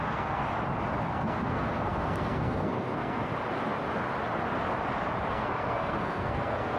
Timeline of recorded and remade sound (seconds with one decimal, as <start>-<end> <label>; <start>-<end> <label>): 0.0-0.4 remade; 0.4-1.1 recorded; 1.1-3.3 remade; 3.3-5.3 recorded; 5.3-6.8 remade